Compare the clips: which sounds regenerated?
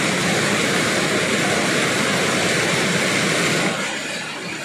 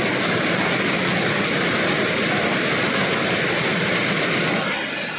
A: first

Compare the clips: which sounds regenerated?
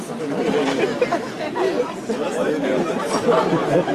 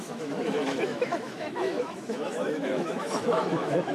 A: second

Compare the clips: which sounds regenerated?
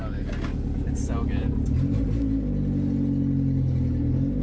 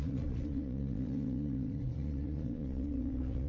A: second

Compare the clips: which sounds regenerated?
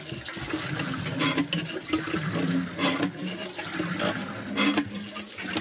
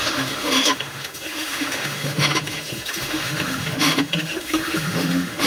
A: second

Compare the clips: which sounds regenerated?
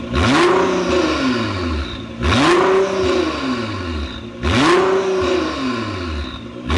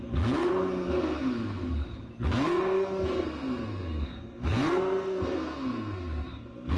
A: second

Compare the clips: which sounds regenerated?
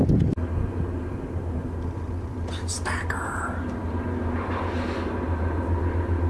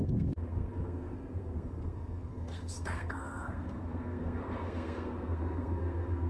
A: second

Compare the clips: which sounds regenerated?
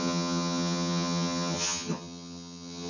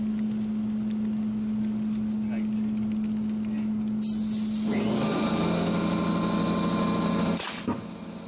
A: first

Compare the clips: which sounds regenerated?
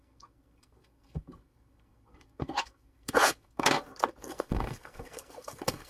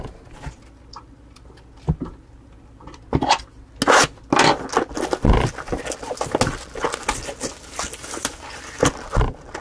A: first